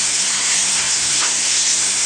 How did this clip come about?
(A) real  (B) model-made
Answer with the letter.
B